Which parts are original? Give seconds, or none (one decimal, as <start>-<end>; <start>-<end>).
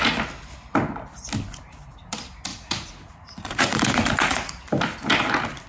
0.0-2.5; 4.5-5.7